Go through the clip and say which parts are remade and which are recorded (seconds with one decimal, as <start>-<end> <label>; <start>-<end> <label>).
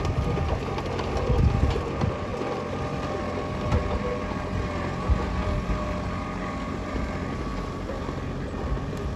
0.0-2.3 recorded; 2.3-3.2 remade; 3.2-7.5 recorded; 7.5-9.2 remade